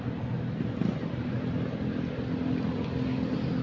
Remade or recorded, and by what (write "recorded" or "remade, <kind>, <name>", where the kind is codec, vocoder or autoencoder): recorded